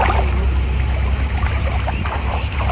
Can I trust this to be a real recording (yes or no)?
yes